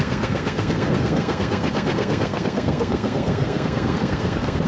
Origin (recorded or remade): remade